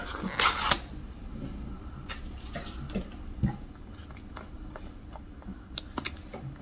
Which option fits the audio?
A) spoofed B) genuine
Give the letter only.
B